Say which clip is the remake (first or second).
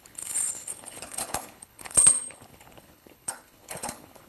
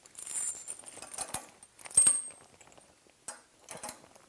first